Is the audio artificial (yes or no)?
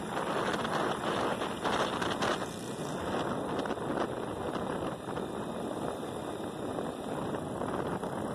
no